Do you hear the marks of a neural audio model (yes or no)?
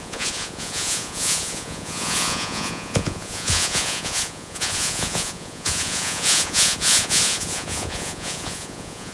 yes